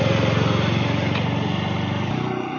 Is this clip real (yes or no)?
yes